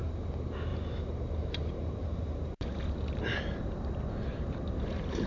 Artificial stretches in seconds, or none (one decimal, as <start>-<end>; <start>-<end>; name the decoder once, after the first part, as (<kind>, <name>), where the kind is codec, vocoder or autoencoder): 0.7-3.9 (vocoder, BigVGAN v2); 4.3-5.3